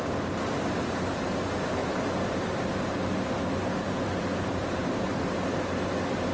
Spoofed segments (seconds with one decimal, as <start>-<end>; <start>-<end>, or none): 1.8-5.6